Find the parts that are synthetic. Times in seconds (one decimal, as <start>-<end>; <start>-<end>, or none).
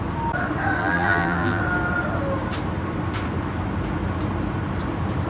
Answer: 0.8-1.6